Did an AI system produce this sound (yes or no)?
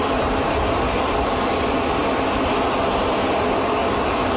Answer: no